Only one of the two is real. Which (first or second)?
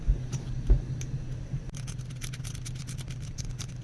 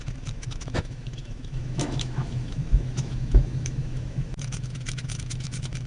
first